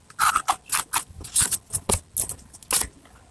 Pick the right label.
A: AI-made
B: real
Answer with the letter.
B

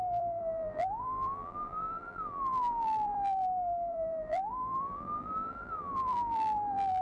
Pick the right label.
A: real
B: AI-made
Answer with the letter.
B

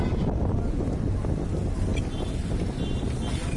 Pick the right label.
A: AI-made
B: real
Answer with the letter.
B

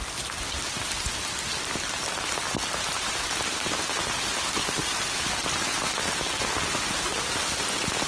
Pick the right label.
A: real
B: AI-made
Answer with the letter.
A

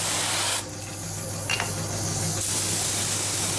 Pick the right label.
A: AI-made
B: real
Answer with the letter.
B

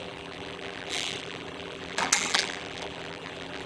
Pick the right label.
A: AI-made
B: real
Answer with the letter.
A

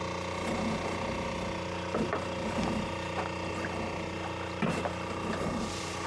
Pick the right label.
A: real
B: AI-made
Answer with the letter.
A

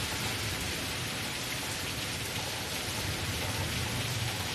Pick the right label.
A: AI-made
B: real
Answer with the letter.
A